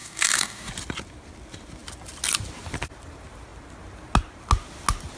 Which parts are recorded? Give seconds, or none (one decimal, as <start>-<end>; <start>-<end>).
0.7-5.2